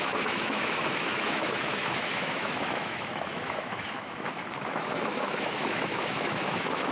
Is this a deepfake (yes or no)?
yes